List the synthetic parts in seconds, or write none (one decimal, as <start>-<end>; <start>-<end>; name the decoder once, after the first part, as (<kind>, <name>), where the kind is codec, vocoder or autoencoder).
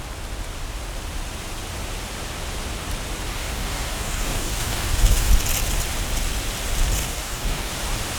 3.3-5.3 (codec, DAC); 7.0-7.7